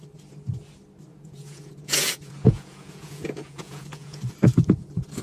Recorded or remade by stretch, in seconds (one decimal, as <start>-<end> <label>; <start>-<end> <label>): 0.0-1.1 recorded; 1.1-4.2 remade; 4.2-5.2 recorded